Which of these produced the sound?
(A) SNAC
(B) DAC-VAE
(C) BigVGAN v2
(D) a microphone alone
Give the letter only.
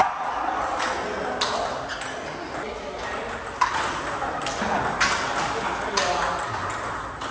D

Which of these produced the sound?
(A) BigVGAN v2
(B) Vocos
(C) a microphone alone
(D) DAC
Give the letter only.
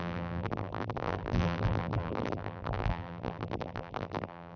A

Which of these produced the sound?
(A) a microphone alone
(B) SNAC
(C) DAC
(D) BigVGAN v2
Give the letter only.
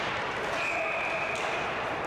A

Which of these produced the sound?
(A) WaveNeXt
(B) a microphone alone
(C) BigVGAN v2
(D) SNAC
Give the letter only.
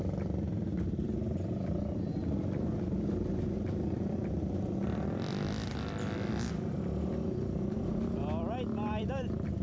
C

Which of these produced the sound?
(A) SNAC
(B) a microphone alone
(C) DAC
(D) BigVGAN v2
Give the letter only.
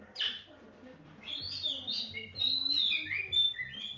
B